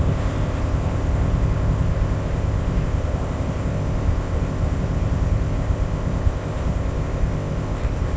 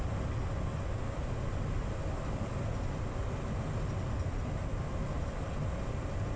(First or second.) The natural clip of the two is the second